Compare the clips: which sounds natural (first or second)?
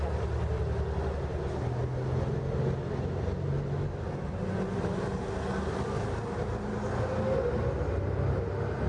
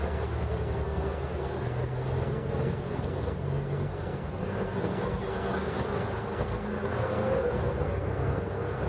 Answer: first